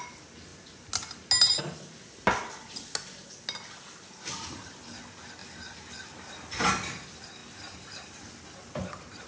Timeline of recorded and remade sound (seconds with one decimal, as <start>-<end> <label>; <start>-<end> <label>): 0.0-9.3 recorded